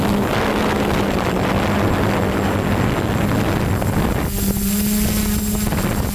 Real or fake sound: real